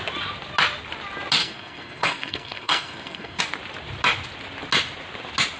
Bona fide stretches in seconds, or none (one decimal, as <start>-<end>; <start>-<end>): 0.0-1.4; 3.4-5.6